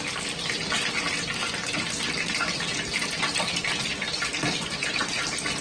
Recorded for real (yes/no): yes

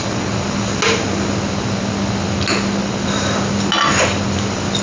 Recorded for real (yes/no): yes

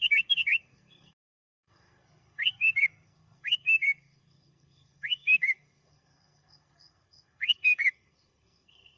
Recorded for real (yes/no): no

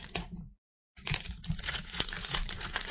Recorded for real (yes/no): no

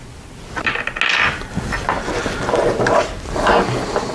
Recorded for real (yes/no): yes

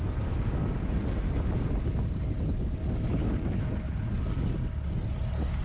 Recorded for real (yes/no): yes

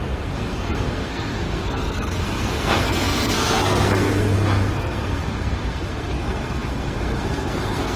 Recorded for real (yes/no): no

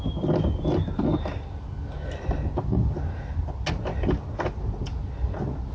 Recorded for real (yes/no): yes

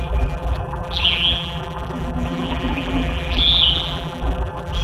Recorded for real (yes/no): no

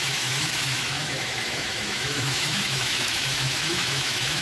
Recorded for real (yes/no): no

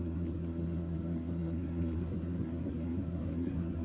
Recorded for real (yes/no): no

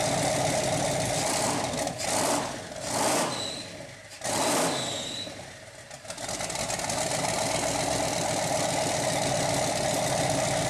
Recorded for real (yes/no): yes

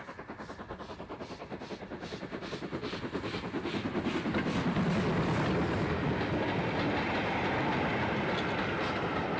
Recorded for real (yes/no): yes